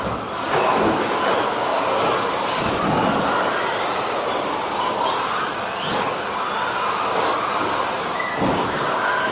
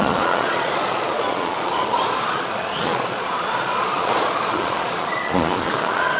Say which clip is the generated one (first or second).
second